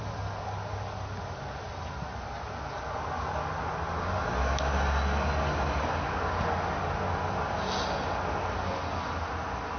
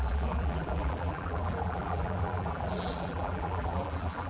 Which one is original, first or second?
first